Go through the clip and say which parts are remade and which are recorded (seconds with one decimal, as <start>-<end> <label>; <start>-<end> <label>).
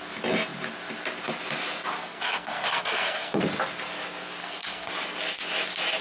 0.0-2.0 recorded; 2.0-3.4 remade; 3.4-4.4 recorded; 4.4-4.9 remade; 4.9-6.0 recorded